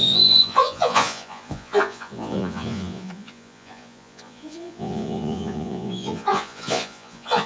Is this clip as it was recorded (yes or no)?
no